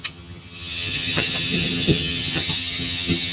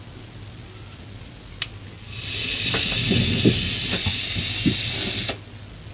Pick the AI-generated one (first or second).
first